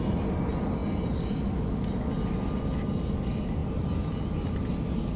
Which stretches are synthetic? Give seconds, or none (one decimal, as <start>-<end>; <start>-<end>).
none